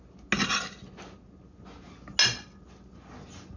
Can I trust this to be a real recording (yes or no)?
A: yes